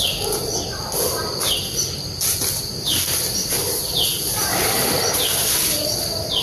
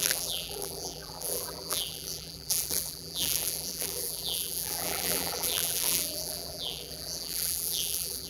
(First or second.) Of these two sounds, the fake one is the second